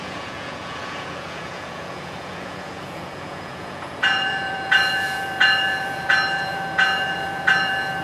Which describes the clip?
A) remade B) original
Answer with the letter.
A